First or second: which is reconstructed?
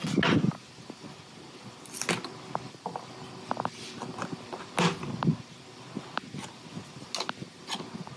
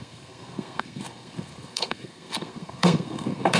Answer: second